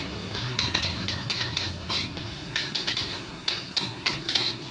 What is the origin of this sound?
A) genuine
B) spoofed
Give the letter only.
B